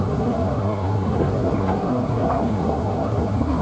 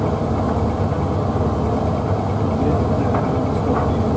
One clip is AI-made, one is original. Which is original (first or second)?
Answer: second